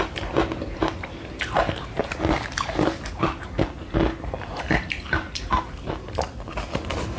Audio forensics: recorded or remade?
recorded